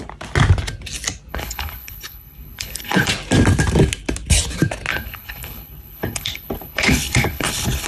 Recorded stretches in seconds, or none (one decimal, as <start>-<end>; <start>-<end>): 0.0-1.3; 3.1-4.9